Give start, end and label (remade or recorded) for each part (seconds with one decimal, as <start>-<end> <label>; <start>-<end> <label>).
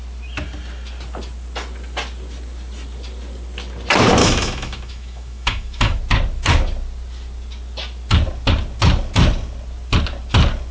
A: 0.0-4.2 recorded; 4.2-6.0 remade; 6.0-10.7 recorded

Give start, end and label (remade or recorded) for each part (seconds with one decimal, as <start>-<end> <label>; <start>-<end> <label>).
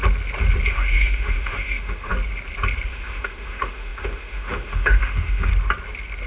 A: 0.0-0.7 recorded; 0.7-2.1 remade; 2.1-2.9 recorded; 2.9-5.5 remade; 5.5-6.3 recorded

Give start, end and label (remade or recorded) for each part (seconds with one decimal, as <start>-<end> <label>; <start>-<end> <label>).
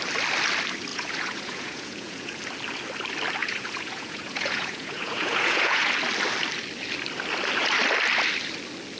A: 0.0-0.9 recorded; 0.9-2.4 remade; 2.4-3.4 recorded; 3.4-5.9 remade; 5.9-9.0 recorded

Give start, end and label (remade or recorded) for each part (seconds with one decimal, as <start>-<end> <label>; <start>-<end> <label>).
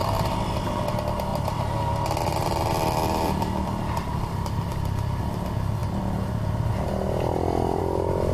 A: 0.0-0.8 remade; 0.8-1.3 recorded; 1.3-5.2 remade; 5.2-8.3 recorded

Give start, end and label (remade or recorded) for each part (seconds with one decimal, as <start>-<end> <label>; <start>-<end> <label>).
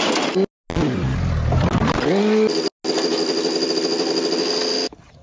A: 0.0-5.2 recorded